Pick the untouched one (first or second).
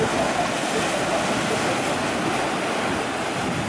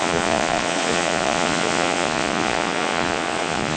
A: first